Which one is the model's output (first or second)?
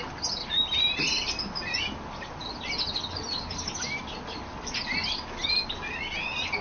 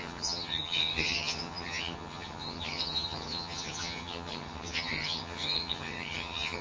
second